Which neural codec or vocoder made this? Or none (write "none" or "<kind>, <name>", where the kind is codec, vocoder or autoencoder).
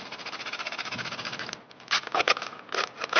none